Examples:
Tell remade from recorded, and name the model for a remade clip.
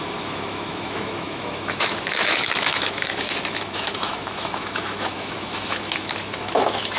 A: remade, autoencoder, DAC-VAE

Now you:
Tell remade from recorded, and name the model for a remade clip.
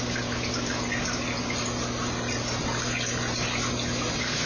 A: recorded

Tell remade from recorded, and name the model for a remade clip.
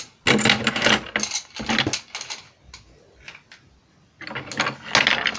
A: recorded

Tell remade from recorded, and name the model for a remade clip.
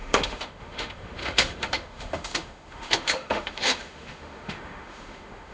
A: remade, autoencoder, DAC-VAE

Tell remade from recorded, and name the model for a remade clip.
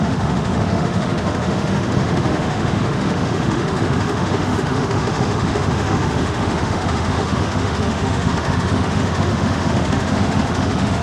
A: remade, autoencoder, DAC-VAE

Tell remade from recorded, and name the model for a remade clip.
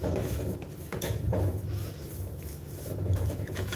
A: remade, autoencoder, DAC-VAE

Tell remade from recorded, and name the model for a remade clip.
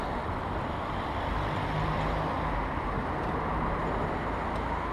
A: recorded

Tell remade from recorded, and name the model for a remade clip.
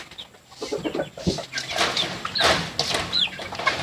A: recorded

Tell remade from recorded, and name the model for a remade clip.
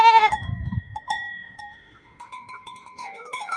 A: remade, autoencoder, DAC-VAE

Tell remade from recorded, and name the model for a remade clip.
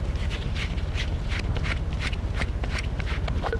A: recorded